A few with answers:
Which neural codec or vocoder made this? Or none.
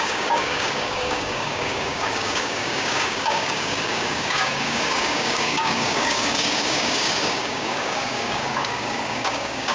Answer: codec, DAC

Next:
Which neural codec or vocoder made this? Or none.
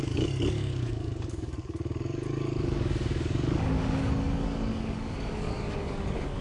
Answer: codec, DAC